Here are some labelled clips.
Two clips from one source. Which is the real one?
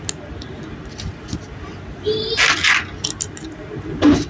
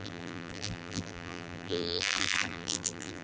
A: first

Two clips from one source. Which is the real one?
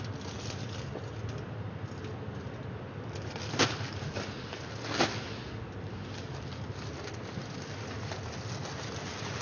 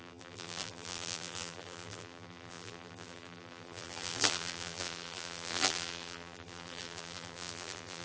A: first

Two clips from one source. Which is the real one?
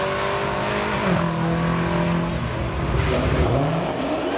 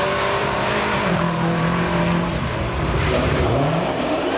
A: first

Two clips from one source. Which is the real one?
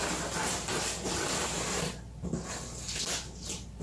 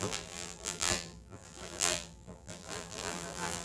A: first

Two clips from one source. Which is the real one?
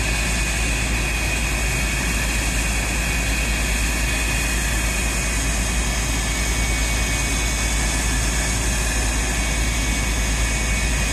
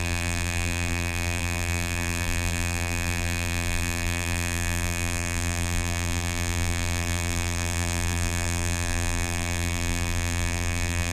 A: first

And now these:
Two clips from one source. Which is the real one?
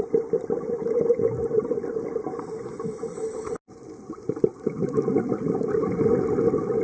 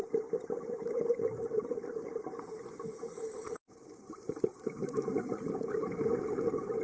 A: first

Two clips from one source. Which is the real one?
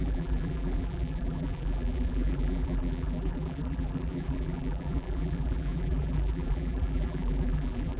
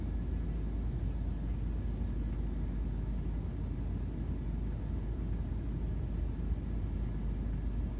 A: second